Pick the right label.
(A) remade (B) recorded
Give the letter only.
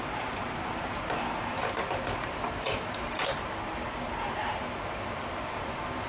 A